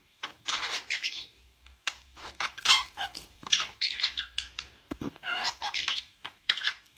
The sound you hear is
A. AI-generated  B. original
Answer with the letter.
A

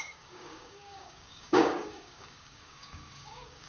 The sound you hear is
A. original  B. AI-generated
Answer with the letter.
B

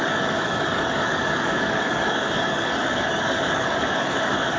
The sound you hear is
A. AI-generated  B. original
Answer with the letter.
A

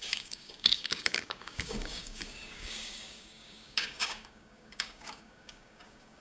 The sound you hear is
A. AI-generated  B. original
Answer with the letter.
A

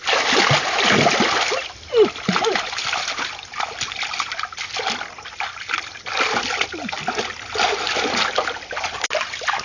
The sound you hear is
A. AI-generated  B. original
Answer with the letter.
B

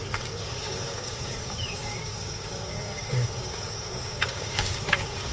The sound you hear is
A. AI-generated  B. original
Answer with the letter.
A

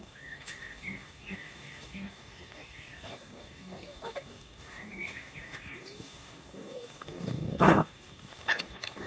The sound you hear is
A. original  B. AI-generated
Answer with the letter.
B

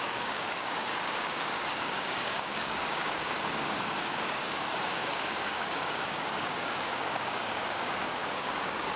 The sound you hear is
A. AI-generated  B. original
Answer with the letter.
A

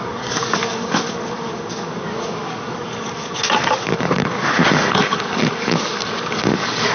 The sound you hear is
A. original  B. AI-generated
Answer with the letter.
B